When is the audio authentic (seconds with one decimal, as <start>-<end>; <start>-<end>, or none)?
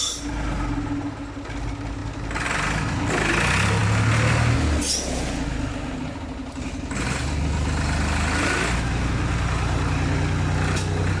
0.0-11.2